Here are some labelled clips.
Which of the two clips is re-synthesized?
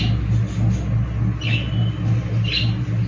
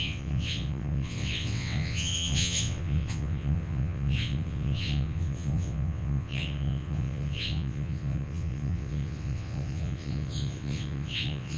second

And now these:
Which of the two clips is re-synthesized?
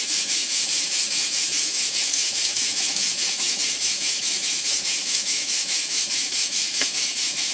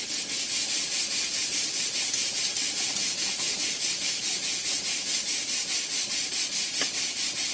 first